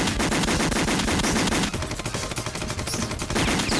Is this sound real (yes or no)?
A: yes